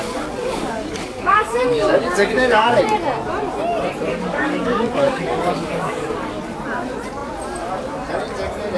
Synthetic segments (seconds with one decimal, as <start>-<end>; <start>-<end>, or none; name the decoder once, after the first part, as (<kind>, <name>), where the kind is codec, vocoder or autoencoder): 0.4-2.8 (codec, DAC); 4.1-6.4